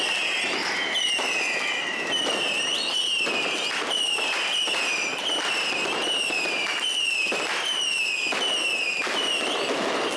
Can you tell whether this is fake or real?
real